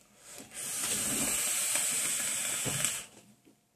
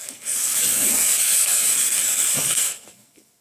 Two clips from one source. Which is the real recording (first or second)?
first